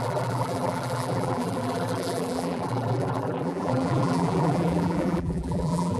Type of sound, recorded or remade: remade